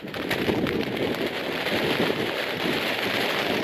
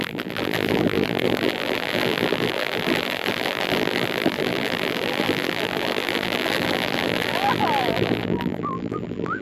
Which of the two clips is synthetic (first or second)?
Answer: second